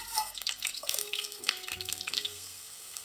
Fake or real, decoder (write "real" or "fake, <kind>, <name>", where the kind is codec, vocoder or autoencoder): fake, codec, SNAC